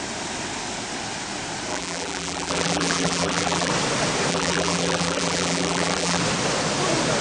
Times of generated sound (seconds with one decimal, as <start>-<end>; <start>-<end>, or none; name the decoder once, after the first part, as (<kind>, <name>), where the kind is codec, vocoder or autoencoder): 1.7-3.7 (vocoder, BigVGAN v2); 4.3-6.2